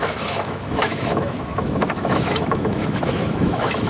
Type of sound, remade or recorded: remade